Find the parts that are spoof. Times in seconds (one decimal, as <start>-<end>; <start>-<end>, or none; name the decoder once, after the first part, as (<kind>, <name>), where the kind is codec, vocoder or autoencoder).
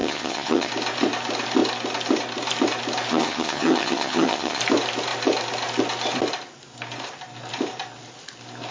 0.0-0.7 (vocoder, HiFi-GAN); 3.1-4.6